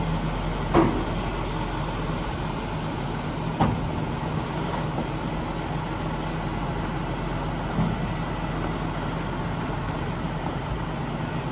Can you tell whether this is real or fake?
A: real